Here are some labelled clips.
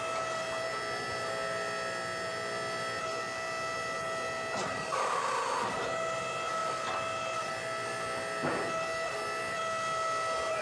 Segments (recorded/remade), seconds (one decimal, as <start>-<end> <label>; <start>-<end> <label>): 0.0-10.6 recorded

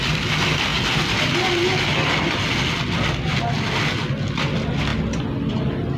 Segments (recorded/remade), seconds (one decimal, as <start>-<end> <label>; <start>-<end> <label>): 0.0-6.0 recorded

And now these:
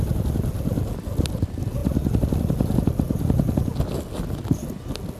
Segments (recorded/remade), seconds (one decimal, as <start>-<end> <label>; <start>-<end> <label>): 0.0-5.2 recorded

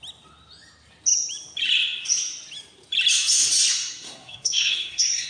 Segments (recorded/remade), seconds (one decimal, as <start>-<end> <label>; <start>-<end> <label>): 0.0-3.7 recorded; 3.7-5.3 remade

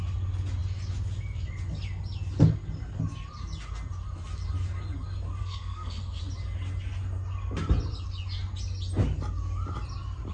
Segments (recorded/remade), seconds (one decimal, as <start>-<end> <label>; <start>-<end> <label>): 0.0-5.4 recorded; 5.4-6.2 remade; 6.2-10.3 recorded

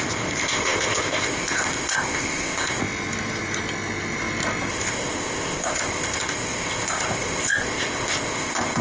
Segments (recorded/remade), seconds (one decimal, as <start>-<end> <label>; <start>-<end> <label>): 0.0-2.8 remade; 2.8-4.7 recorded; 4.7-8.8 remade

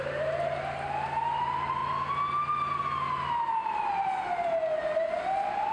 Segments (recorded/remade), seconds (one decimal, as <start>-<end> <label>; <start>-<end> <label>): 0.0-5.7 recorded